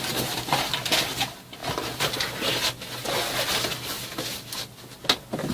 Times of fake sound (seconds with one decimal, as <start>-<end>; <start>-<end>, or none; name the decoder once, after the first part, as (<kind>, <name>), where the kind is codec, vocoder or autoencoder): none